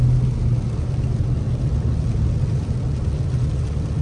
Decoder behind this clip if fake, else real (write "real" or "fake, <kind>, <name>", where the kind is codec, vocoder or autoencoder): real